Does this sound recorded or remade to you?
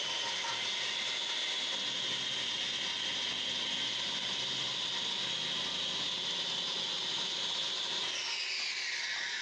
recorded